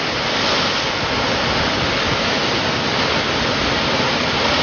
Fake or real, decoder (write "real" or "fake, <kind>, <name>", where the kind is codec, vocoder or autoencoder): real